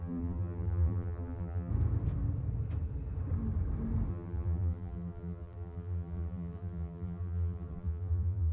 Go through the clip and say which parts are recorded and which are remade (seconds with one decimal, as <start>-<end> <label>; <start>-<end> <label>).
0.0-1.7 remade; 1.7-4.1 recorded; 4.1-8.5 remade